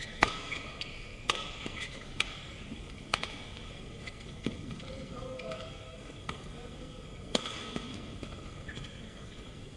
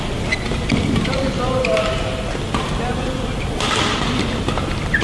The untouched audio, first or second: second